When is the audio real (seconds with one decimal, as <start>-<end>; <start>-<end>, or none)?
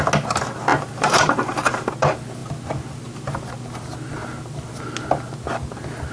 0.0-0.7; 1.7-6.1